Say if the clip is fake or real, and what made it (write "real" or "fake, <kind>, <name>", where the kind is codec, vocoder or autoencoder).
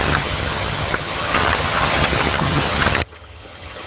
fake, vocoder, HiFi-GAN